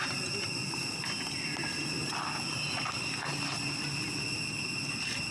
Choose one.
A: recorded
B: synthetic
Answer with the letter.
A